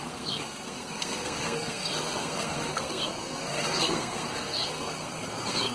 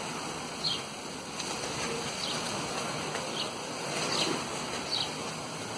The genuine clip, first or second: second